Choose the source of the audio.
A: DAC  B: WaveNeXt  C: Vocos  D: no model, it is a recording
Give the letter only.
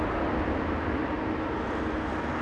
D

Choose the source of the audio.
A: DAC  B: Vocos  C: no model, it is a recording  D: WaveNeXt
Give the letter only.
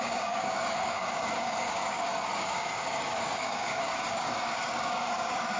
A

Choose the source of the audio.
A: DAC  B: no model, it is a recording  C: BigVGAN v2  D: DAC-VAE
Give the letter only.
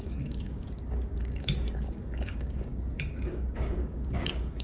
A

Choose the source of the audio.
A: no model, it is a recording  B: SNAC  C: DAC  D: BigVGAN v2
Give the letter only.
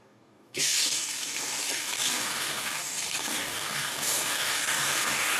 C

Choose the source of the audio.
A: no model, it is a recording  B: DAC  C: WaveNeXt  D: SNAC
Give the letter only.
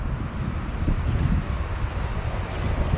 A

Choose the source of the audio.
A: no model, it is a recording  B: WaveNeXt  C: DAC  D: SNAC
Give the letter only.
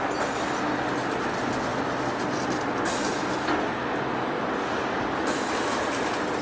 A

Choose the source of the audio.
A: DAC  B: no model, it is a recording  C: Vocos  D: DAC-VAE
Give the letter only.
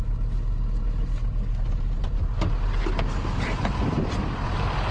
B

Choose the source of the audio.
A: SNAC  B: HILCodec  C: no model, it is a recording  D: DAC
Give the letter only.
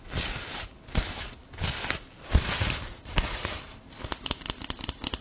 C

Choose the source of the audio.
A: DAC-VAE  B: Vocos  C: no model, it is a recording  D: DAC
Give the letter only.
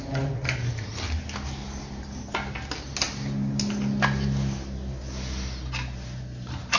C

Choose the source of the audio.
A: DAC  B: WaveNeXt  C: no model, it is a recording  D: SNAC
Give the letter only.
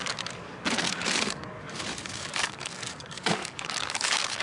A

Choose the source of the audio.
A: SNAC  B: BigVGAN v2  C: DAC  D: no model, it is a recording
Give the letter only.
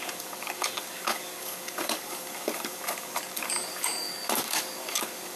C